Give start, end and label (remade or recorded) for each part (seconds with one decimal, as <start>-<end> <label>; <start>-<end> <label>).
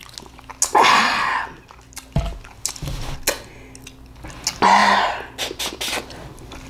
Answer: 0.0-6.7 recorded